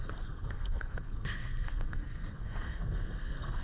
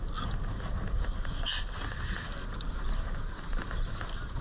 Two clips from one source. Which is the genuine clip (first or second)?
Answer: second